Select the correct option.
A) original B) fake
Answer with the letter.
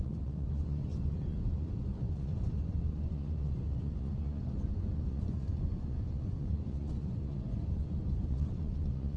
B